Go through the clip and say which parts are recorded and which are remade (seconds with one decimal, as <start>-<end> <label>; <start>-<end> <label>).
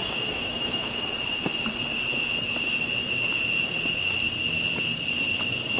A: 0.0-1.1 remade; 1.1-5.8 recorded